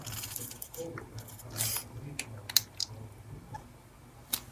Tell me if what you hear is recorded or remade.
recorded